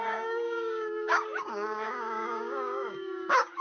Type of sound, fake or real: fake